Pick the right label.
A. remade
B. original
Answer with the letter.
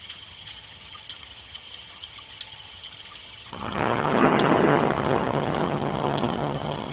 A